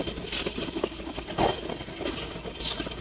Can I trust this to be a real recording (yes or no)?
yes